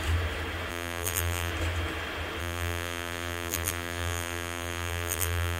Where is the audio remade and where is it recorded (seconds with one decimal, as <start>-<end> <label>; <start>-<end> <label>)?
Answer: 0.0-0.7 recorded; 0.7-1.5 remade; 1.5-2.4 recorded; 2.4-5.6 remade